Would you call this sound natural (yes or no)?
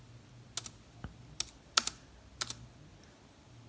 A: yes